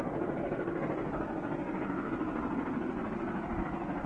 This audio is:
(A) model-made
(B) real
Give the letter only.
B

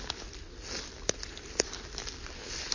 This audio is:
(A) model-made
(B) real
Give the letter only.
B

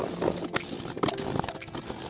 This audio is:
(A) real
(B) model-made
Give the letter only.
A